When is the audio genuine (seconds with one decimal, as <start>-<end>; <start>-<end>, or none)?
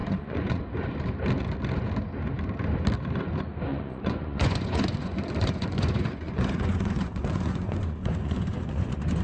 0.6-3.7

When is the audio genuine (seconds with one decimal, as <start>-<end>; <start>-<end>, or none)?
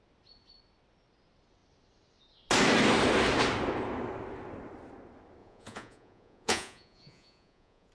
0.0-5.4